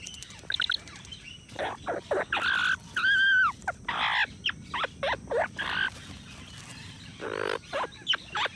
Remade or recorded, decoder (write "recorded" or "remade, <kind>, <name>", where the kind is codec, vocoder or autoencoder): recorded